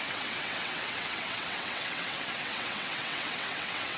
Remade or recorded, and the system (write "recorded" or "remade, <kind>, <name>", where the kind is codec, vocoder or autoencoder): remade, vocoder, WaveNeXt